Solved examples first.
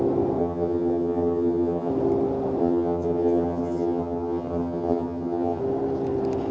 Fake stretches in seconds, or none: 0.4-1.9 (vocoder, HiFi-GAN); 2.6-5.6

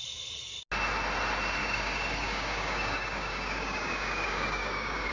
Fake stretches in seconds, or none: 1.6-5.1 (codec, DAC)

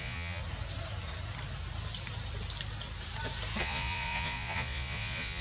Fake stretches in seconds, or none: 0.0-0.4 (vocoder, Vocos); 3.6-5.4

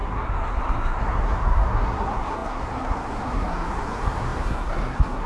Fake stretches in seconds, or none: 0.0-5.3 (codec, SNAC)

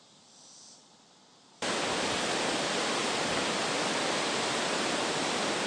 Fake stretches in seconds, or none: none

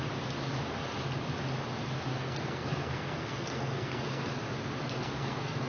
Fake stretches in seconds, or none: 2.1-4.3 (codec, SNAC); 4.8-5.7

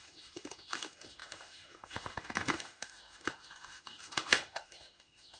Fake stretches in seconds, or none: 0.0-5.4 (autoencoder, DAC-VAE)

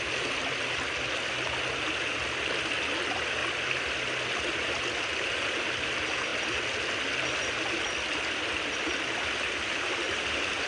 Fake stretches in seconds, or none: none